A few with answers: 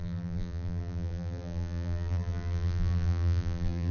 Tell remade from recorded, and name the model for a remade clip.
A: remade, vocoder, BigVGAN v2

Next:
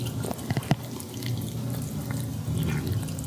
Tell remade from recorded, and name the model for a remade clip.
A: recorded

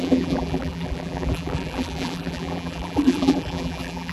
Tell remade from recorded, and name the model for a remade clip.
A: remade, vocoder, BigVGAN v2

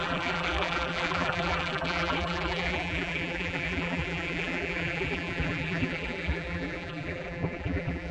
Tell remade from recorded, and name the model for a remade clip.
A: remade, vocoder, BigVGAN v2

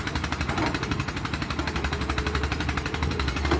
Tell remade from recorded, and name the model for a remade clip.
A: remade, vocoder, BigVGAN v2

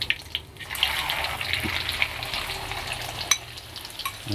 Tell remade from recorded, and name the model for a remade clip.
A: recorded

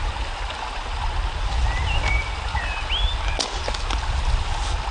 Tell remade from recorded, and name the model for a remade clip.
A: recorded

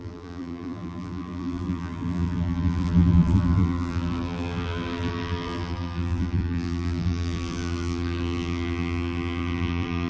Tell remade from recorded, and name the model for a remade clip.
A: remade, vocoder, BigVGAN v2